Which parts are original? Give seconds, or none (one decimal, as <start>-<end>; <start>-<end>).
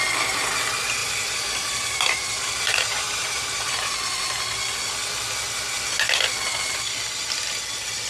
0.0-1.0; 4.4-8.1